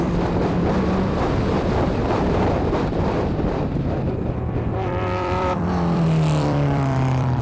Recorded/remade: remade